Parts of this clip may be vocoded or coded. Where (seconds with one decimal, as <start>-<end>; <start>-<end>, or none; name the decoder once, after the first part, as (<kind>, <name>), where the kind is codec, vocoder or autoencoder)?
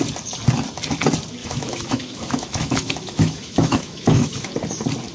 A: 1.4-4.5 (autoencoder, DAC-VAE)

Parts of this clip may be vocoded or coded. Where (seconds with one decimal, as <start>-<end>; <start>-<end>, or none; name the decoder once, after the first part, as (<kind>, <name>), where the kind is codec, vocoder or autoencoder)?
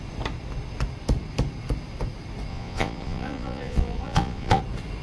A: 2.5-4.6 (vocoder, Vocos)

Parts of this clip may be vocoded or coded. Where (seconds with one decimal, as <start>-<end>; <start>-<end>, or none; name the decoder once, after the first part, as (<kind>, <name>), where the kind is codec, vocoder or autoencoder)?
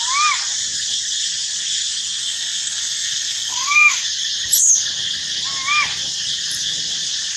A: 2.2-4.0 (codec, SNAC)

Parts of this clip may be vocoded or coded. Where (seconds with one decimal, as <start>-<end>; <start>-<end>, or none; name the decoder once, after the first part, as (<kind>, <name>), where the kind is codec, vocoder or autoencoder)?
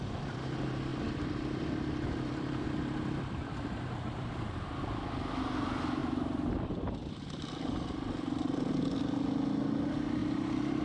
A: 0.9-4.8 (vocoder, BigVGAN v2); 6.0-8.9; 10.2-10.8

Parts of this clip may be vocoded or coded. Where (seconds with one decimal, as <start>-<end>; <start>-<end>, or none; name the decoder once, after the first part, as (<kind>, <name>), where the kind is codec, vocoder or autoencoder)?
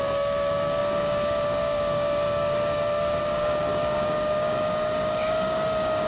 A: 0.0-6.1 (codec, DAC)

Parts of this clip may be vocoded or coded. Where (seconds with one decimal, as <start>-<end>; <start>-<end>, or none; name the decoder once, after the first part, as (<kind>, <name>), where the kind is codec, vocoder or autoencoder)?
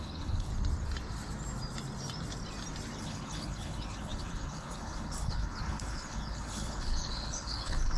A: 0.0-0.5 (codec, HILCodec); 3.0-8.0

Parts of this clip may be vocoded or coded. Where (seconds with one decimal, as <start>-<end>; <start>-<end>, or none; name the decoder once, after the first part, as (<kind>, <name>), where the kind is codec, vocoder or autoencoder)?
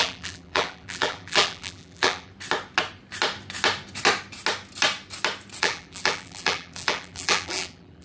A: 0.0-2.3 (vocoder, BigVGAN v2); 5.6-8.0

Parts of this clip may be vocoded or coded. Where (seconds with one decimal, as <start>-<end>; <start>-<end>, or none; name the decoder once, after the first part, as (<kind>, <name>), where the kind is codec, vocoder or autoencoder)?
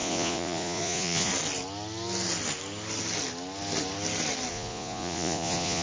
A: 0.0-1.3 (vocoder, Vocos); 4.5-5.8